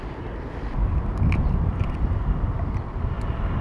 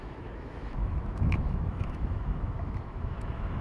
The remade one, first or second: second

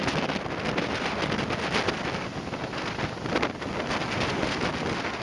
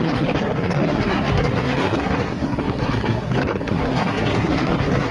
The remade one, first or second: second